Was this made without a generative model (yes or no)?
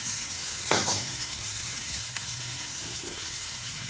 no